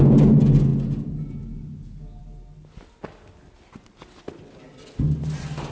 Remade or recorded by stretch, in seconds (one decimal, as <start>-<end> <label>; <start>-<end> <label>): 0.0-2.2 remade; 2.2-5.7 recorded